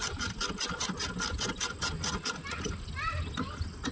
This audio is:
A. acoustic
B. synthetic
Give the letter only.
A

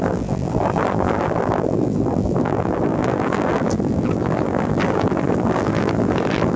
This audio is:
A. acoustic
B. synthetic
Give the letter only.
B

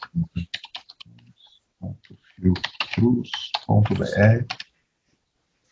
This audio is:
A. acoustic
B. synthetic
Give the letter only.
A